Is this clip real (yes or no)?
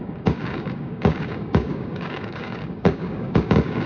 no